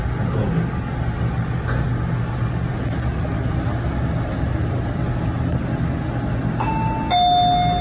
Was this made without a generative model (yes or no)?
yes